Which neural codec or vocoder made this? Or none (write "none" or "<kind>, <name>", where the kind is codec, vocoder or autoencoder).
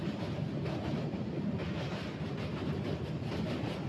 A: none